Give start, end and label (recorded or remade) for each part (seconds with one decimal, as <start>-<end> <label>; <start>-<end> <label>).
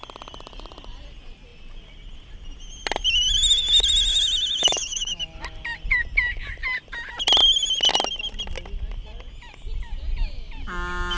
0.0-4.1 recorded; 4.1-5.2 remade; 5.2-11.2 recorded